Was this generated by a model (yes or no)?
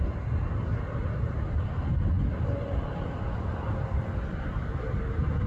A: no